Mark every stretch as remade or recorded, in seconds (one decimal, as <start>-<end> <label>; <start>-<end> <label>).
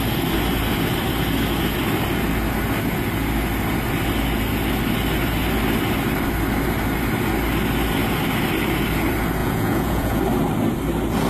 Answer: 0.0-9.4 recorded; 9.4-10.2 remade; 10.2-11.3 recorded